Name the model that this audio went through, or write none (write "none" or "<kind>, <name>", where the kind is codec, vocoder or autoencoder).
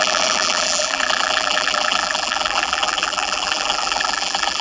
vocoder, BigVGAN v2